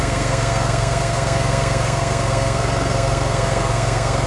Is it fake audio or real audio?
fake